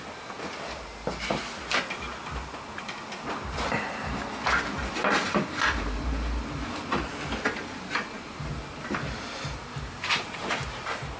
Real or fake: real